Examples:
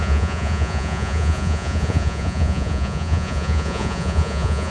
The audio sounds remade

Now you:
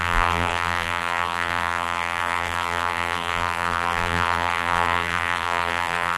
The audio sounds remade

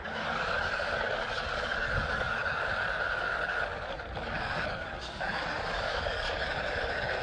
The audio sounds remade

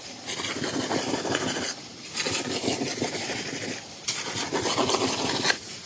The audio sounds recorded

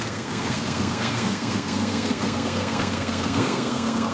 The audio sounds remade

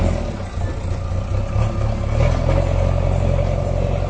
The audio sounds recorded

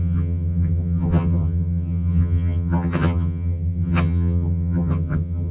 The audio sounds remade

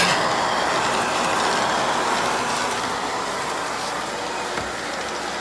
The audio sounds recorded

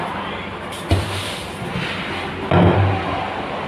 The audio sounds recorded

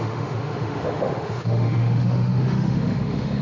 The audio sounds remade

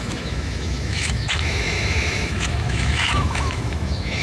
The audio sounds remade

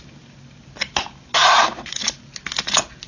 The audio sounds recorded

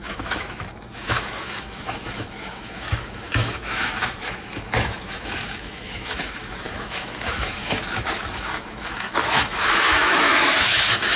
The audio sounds remade